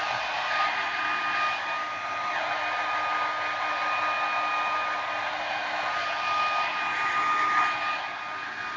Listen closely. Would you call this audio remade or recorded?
recorded